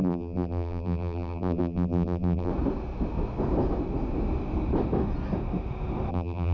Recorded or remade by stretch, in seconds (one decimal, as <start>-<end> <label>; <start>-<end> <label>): 0.0-2.5 remade; 2.5-6.1 recorded; 6.1-6.5 remade